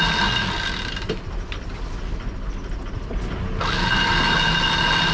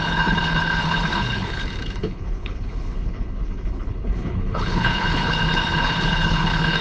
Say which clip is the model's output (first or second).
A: second